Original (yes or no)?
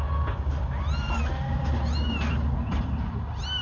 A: yes